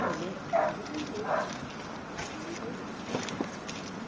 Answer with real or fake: real